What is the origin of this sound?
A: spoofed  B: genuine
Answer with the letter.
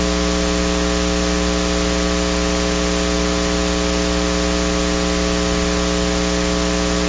B